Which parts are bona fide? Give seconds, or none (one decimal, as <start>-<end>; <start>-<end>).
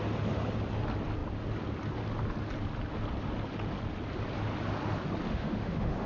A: 0.0-5.3